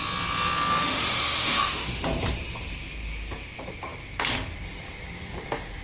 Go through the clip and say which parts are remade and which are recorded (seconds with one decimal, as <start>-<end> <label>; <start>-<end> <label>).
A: 0.0-0.8 recorded; 0.8-2.0 remade; 2.0-5.8 recorded